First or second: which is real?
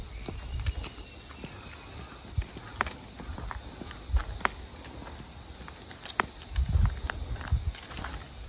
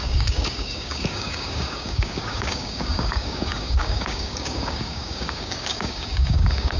first